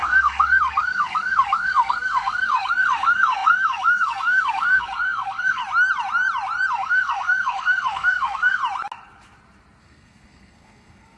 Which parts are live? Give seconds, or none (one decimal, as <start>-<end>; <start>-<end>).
5.6-6.7; 8.6-9.8